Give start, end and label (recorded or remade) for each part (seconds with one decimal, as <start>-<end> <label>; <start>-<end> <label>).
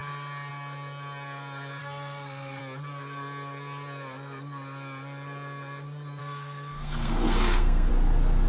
0.0-1.8 recorded; 1.8-2.6 remade; 2.6-6.2 recorded; 6.2-7.9 remade; 7.9-8.5 recorded